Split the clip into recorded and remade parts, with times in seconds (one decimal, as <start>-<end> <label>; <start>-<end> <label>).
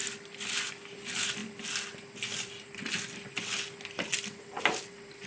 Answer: 0.0-5.3 recorded